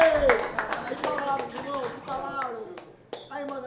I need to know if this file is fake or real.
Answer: real